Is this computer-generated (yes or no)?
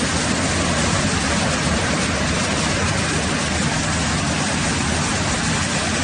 no